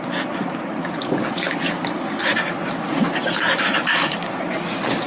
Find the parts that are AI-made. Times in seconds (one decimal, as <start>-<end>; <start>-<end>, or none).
none